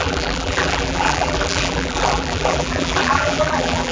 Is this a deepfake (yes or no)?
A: yes